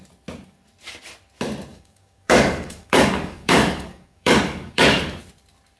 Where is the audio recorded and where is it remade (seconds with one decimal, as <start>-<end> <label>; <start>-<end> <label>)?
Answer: 0.0-1.7 recorded; 1.7-5.2 remade; 5.2-5.8 recorded